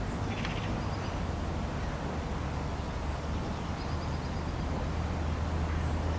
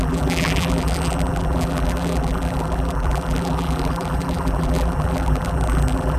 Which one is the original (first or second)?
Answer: first